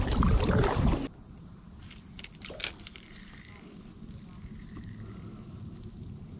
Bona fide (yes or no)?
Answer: yes